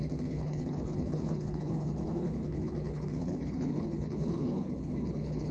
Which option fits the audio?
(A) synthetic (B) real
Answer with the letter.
A